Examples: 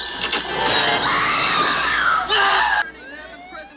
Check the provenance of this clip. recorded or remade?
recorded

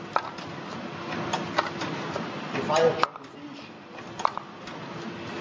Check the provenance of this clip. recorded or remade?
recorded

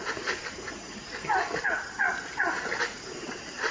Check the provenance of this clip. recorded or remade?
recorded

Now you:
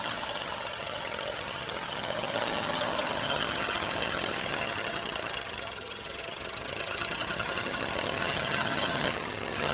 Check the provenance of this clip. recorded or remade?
remade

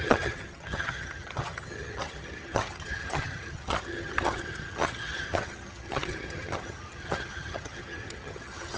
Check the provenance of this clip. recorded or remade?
remade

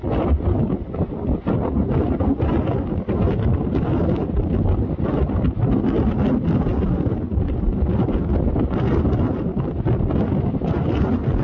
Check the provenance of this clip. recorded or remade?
recorded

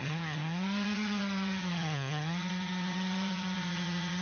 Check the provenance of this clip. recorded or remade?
remade